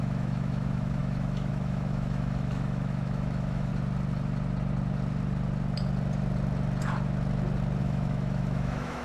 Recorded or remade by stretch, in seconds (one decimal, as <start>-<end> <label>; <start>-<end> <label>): 0.0-3.7 remade; 3.7-7.8 recorded; 7.8-9.0 remade